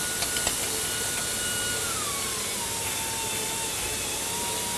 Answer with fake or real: real